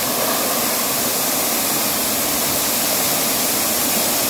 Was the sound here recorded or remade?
remade